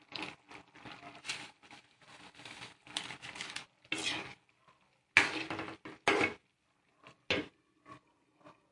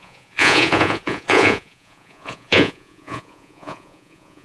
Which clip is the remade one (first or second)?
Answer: second